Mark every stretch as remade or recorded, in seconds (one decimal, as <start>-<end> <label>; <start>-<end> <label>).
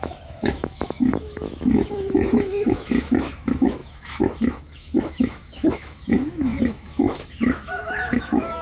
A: 0.0-8.6 remade